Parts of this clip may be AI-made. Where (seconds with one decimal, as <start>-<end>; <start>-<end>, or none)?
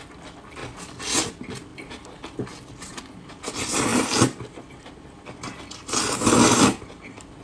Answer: 3.9-4.4